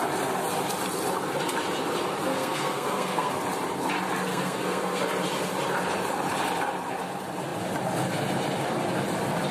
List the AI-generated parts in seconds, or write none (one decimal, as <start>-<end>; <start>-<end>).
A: 2.3-3.3; 4.3-5.0